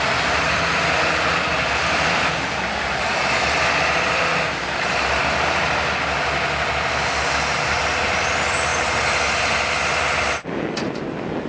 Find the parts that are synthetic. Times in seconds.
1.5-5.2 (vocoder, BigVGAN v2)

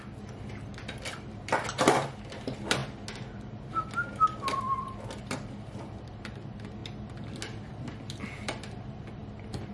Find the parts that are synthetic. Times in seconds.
0.0-0.7 (vocoder, BigVGAN v2); 1.2-2.8; 5.2-6.8; 8.1-9.7

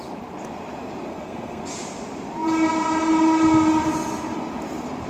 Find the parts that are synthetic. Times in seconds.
1.1-1.6 (codec, SNAC)

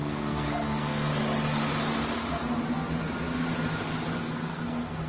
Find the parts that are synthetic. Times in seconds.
0.0-1.1 (codec, SNAC); 4.2-5.1